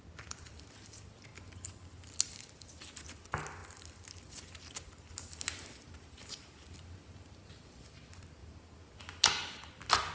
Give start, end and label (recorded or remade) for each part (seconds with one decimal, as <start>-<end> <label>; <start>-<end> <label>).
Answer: 0.0-10.1 recorded